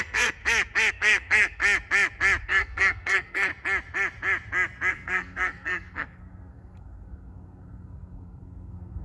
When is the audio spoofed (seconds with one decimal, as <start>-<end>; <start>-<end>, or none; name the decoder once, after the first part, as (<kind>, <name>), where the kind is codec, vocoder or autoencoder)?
0.0-0.4 (codec, SNAC); 0.9-1.6; 2.4-3.5; 4.9-9.0